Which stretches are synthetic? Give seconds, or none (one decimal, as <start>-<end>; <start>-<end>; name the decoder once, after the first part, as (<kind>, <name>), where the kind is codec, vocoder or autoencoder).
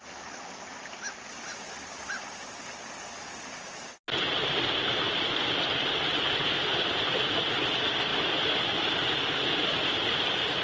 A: none